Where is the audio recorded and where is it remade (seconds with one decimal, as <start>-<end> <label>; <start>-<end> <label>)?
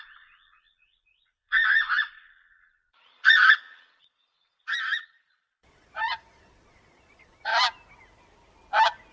0.0-7.5 remade; 7.5-9.1 recorded